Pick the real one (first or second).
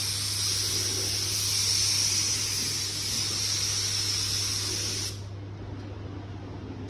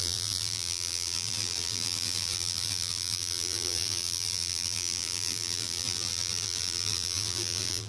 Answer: first